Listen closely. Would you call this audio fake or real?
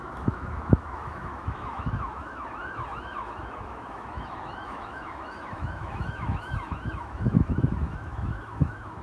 fake